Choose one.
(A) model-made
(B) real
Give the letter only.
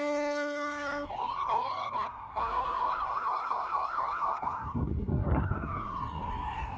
A